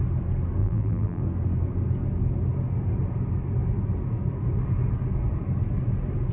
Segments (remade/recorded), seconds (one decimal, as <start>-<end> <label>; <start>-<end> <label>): 0.0-0.6 recorded; 0.6-1.2 remade; 1.2-6.3 recorded